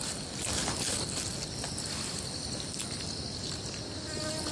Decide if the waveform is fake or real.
real